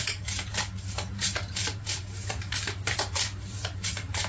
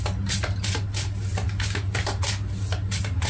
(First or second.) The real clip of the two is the second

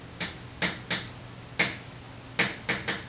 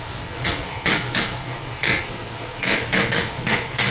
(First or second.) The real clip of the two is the first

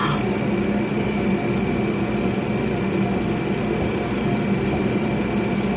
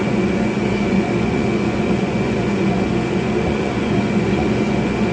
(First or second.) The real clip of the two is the first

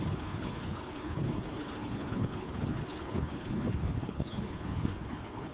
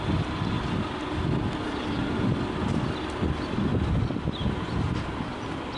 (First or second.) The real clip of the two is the second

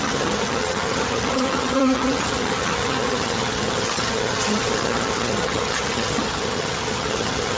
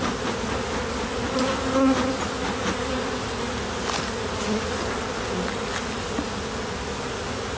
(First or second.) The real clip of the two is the second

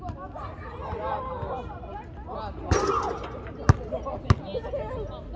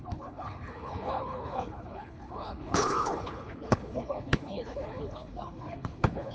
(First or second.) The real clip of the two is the first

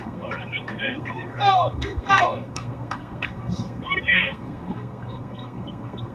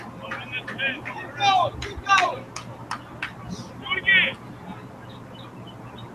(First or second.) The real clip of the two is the second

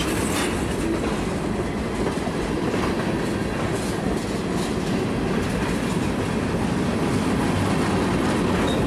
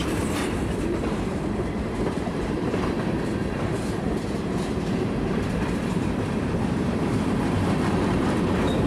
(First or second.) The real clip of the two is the first